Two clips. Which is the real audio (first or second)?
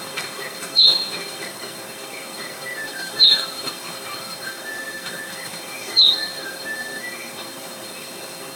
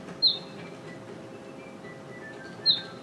second